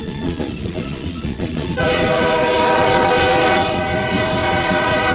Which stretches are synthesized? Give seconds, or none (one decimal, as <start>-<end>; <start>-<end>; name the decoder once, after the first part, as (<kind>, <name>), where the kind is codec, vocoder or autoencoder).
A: 0.0-5.1 (vocoder, Vocos)